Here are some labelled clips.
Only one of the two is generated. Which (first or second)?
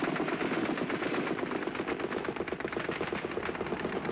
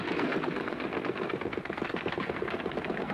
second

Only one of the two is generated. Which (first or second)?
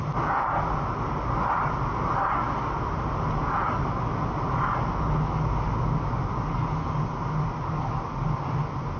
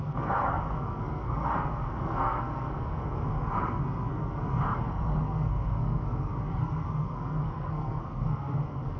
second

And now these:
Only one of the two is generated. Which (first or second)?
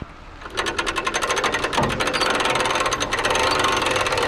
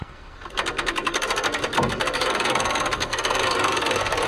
second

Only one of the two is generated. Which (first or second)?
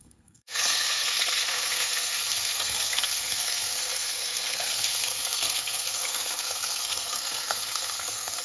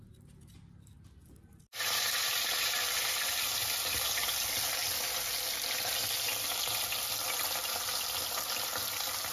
first